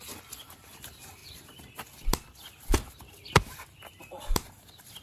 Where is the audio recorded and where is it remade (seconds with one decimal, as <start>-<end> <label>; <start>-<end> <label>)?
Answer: 0.0-5.0 recorded